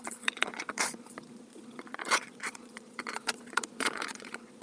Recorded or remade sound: remade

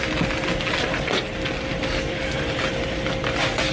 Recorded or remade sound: recorded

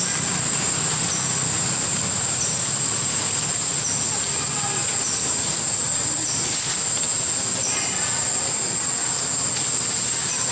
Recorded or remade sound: recorded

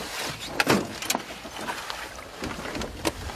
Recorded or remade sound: recorded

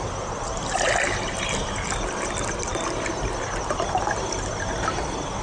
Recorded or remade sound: recorded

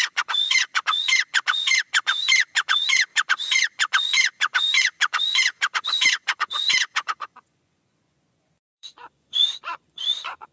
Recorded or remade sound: remade